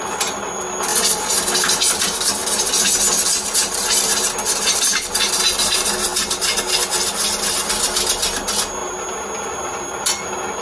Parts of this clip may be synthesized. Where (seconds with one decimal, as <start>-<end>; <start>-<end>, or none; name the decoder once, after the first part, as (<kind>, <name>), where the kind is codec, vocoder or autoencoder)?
none